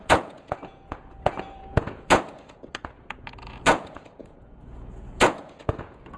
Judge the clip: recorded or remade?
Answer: remade